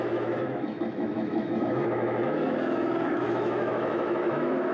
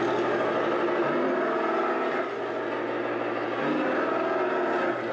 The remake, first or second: first